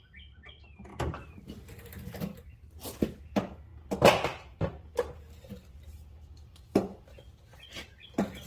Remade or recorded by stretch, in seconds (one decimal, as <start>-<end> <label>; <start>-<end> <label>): 0.0-0.9 recorded; 0.9-2.5 remade; 2.5-6.4 recorded; 6.4-8.5 remade